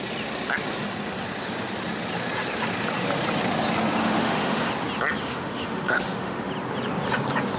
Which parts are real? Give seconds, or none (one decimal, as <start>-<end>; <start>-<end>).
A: 0.0-4.0; 4.7-5.2; 6.5-7.6